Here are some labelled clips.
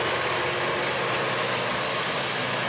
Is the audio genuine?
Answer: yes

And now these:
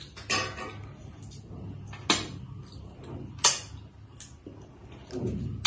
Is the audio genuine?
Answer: yes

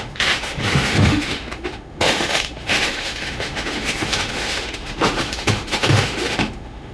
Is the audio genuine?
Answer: no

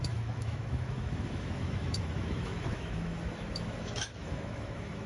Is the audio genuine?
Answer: no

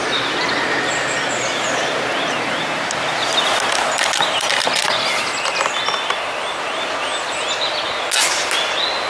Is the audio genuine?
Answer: yes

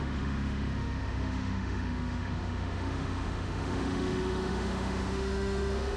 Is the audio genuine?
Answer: no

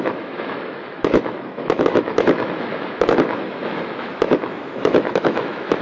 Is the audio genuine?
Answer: no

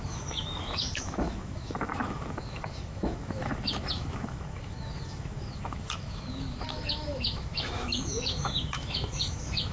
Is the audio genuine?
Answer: no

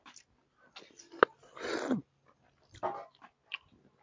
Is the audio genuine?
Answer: yes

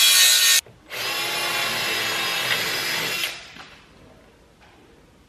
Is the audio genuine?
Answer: yes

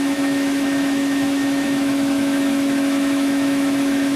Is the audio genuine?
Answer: no